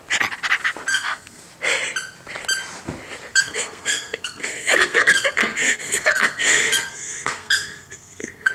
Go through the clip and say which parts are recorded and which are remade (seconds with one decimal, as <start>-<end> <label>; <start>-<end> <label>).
0.0-0.9 recorded; 0.9-1.4 remade; 1.4-3.3 recorded; 3.3-8.5 remade